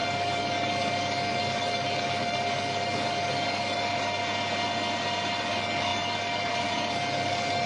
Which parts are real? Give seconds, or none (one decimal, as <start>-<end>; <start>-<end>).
4.2-5.3